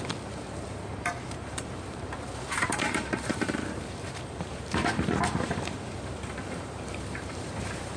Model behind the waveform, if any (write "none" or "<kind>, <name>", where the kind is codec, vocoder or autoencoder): vocoder, BigVGAN v2